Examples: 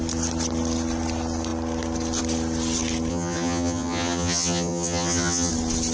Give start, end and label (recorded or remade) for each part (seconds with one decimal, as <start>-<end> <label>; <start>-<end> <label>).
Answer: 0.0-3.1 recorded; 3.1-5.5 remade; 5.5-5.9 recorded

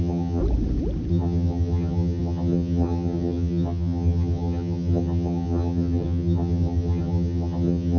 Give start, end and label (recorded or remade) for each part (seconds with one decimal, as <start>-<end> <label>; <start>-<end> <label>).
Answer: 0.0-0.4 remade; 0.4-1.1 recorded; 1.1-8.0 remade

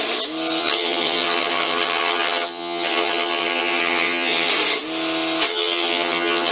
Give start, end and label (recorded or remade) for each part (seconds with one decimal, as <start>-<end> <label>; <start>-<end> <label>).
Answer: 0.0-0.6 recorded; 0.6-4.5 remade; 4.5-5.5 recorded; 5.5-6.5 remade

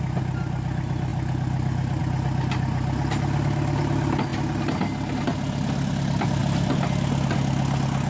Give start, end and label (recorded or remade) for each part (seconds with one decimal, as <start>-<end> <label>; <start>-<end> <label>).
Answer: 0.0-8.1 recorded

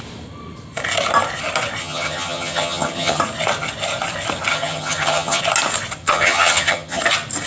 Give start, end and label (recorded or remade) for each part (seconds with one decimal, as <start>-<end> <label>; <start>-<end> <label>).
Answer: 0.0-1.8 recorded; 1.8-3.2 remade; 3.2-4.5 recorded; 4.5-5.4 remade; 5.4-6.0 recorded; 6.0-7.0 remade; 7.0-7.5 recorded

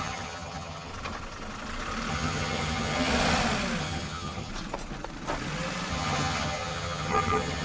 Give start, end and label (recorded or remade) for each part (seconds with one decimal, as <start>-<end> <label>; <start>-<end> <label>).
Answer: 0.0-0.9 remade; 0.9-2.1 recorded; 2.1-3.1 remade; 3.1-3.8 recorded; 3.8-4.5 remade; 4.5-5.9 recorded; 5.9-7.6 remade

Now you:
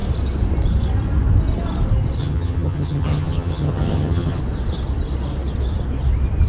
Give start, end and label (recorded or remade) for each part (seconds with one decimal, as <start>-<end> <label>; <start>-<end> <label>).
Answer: 0.0-2.2 recorded; 2.2-4.4 remade; 4.4-6.5 recorded

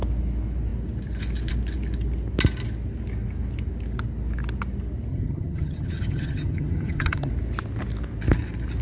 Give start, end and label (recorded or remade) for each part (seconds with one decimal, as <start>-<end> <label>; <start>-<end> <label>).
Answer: 0.0-5.1 recorded; 5.1-7.3 remade; 7.3-8.8 recorded